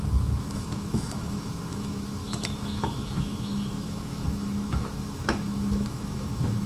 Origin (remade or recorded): remade